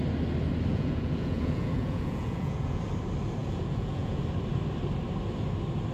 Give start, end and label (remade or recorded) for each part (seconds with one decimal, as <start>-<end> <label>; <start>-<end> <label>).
0.0-0.7 recorded; 0.7-2.8 remade; 2.8-3.4 recorded; 3.4-4.2 remade; 4.2-5.9 recorded